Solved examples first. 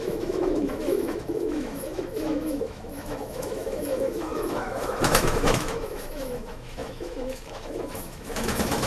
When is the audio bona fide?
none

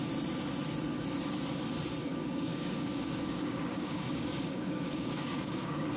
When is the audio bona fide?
0.0-2.1

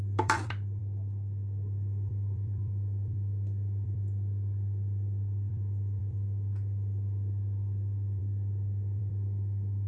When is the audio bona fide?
none